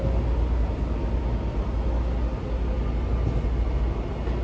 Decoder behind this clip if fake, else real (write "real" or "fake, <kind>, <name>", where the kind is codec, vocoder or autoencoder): real